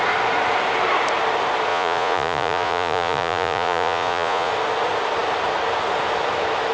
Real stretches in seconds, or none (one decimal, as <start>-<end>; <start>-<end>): 0.0-1.7; 4.5-6.7